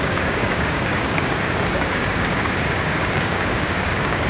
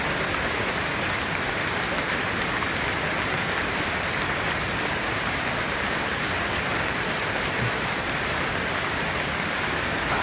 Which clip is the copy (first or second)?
first